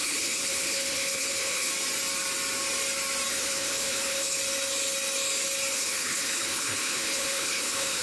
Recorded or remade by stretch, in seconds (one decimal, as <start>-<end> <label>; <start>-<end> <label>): 0.0-1.7 remade; 1.7-3.3 recorded; 3.3-4.4 remade; 4.4-5.7 recorded; 5.7-8.0 remade